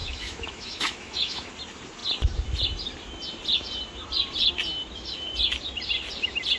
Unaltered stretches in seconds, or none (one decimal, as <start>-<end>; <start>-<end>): 1.5-6.6